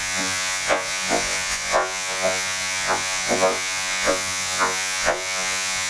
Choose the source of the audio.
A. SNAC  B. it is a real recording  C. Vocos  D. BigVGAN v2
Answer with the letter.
C